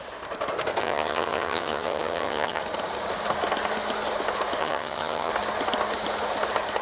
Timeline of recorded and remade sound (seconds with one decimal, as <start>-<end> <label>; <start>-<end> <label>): 0.0-0.8 recorded; 0.8-2.6 remade; 2.6-4.6 recorded; 4.6-5.3 remade; 5.3-6.8 recorded